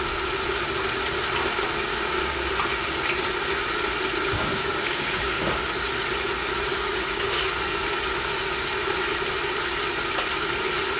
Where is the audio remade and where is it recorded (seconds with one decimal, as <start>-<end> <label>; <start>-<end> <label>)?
0.0-1.9 recorded; 1.9-2.5 remade; 2.5-4.3 recorded; 4.3-5.4 remade; 5.4-6.7 recorded; 6.7-7.5 remade; 7.5-11.0 recorded